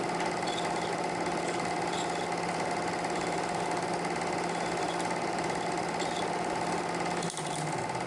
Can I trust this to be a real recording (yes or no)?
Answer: yes